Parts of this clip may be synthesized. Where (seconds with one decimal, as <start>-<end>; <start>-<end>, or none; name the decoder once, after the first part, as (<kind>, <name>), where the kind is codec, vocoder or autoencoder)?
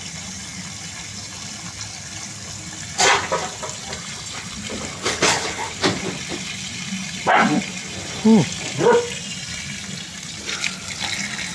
4.9-5.8 (codec, HILCodec)